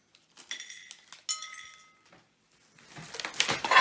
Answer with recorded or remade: recorded